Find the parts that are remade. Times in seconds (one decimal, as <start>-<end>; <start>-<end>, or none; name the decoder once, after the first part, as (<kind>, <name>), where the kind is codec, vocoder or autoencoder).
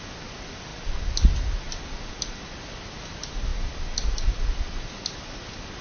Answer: none